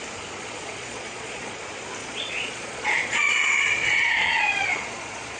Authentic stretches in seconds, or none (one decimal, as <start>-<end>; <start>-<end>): 0.0-0.4; 1.6-2.0